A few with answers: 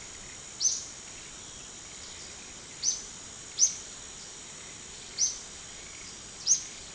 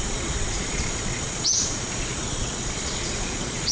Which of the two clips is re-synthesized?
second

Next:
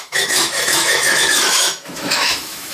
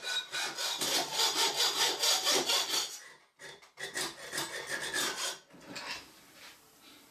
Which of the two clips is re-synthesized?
first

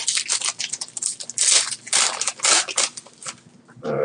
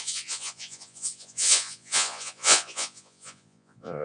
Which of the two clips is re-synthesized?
second